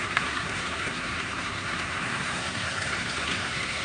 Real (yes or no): no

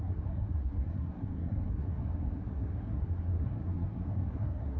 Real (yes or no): no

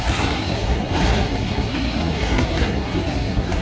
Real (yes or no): no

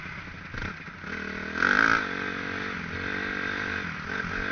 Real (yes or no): yes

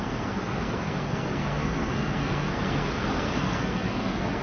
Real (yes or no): no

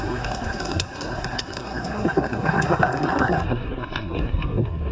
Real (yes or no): no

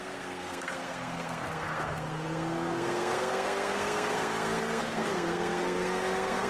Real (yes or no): no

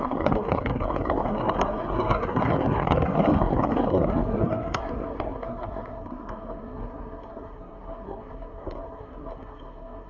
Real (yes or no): no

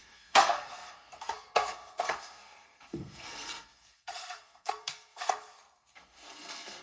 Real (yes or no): no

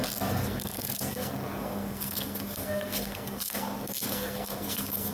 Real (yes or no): no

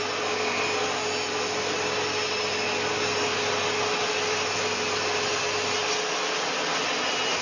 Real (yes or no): yes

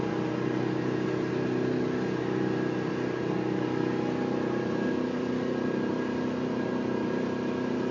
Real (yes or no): yes